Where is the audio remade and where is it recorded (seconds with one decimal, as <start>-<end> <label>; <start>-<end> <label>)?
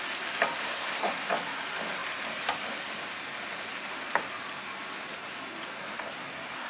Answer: 0.0-0.6 recorded; 0.6-1.1 remade; 1.1-5.8 recorded; 5.8-6.7 remade